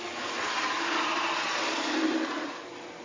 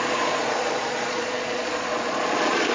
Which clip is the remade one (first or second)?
second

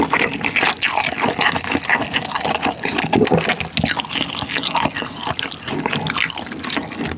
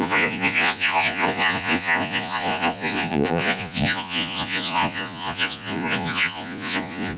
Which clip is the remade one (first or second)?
second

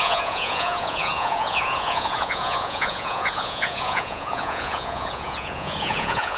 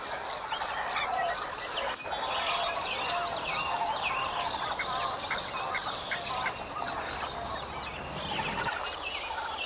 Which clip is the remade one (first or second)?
first